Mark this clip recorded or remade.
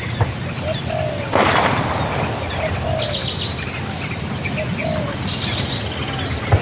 recorded